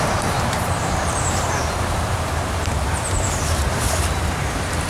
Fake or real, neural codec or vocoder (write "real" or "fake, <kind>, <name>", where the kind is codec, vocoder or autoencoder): fake, vocoder, BigVGAN v2